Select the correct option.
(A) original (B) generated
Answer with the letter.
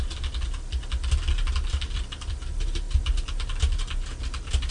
A